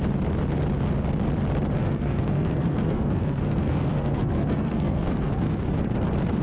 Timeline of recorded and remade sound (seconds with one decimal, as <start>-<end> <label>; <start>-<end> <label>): 0.0-1.8 recorded; 1.8-5.6 remade; 5.6-6.4 recorded